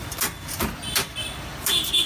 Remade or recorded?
recorded